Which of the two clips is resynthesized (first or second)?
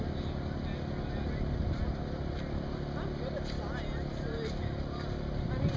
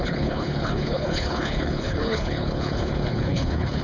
second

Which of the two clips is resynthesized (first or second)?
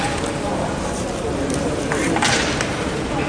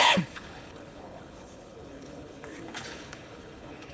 second